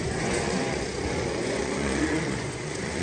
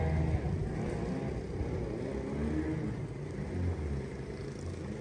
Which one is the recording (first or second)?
second